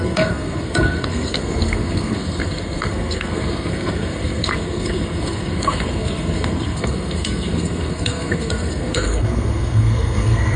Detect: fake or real fake